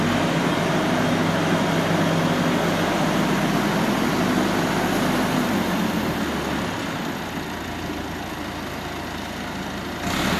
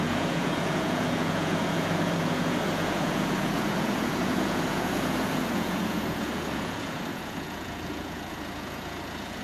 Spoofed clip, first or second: second